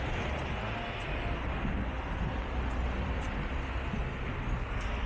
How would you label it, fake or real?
real